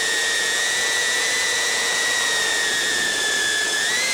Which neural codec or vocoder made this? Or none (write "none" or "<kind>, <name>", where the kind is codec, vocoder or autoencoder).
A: vocoder, Vocos